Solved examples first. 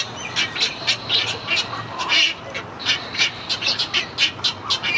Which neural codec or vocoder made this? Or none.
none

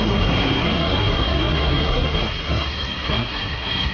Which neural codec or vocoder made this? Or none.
codec, SNAC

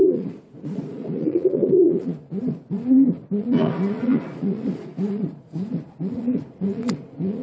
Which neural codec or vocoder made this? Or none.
vocoder, Vocos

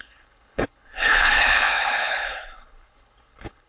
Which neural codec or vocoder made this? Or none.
codec, HILCodec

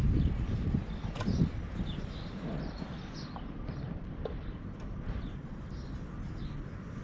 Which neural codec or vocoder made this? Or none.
none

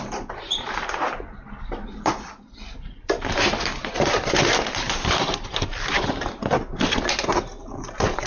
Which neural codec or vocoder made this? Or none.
vocoder, BigVGAN v2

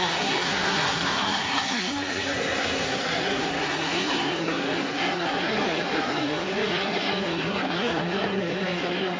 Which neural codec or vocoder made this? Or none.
codec, SNAC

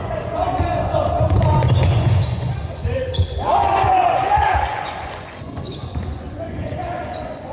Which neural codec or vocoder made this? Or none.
vocoder, Vocos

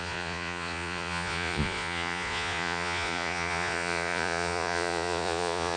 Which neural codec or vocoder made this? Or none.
vocoder, Vocos